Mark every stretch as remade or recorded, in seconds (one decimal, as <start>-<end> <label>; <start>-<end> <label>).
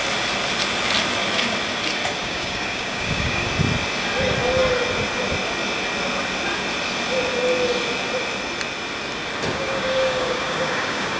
0.0-2.2 recorded; 2.2-3.5 remade; 3.5-9.5 recorded; 9.5-11.2 remade